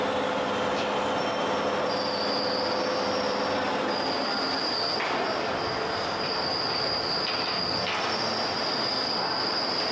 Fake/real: real